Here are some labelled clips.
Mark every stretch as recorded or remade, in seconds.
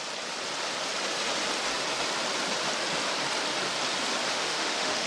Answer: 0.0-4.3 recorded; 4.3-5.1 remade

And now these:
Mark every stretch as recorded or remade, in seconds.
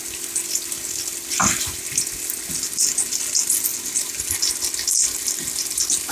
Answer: 0.0-6.1 recorded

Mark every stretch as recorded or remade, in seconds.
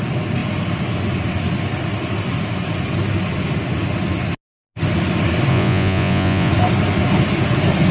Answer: 0.0-5.5 recorded; 5.5-6.5 remade; 6.5-7.9 recorded